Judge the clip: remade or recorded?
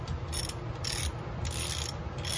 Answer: recorded